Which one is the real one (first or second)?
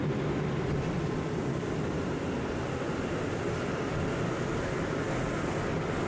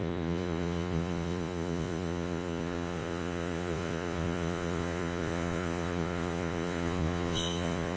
first